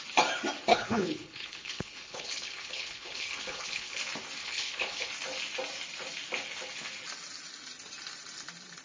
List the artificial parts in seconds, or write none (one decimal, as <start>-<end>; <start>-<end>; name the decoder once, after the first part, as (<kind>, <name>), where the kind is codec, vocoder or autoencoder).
0.7-4.0 (codec, HILCodec); 4.4-5.1